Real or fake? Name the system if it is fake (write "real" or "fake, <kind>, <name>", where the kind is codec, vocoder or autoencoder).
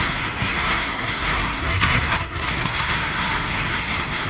fake, codec, SNAC